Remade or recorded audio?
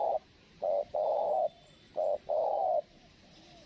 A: remade